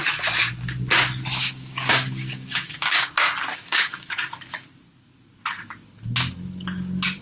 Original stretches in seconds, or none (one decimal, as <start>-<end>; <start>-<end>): 0.0-1.4; 3.1-3.5; 4.3-7.2

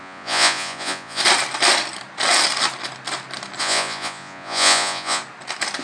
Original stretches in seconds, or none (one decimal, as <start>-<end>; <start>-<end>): 1.2-3.6; 5.2-5.8

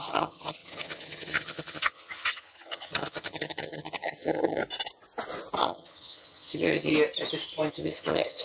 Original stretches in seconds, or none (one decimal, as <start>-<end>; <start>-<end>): 4.6-5.6; 6.9-7.7

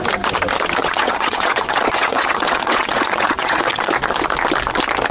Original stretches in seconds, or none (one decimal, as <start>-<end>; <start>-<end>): 0.0-0.8; 3.9-5.1

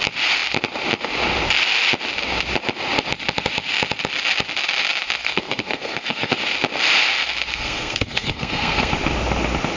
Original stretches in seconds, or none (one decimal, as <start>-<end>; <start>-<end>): 0.0-5.2; 6.3-7.5; 8.9-9.8

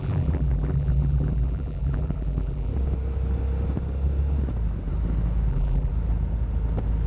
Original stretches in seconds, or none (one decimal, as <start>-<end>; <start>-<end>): 2.7-5.5; 5.9-7.1

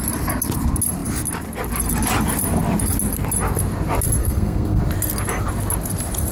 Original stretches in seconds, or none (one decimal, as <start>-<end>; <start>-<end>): 0.0-4.2; 4.8-6.3

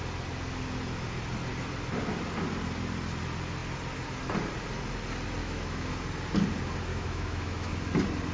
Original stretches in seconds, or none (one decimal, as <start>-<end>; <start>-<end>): 0.0-5.4; 5.9-6.9; 7.7-8.3